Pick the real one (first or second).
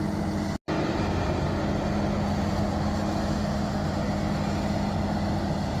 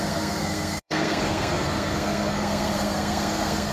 first